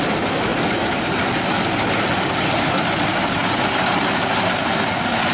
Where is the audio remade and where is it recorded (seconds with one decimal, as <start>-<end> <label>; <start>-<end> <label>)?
0.0-5.3 recorded